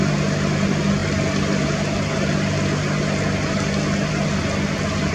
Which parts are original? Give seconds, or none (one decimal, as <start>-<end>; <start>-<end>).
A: 0.0-5.1